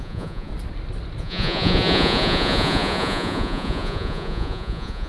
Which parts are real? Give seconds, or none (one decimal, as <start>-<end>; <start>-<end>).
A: 0.5-1.2